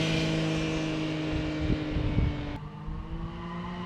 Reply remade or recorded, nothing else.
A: recorded